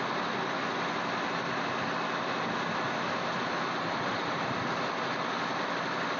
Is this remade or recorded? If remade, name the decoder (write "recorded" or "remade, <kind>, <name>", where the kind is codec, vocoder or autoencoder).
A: recorded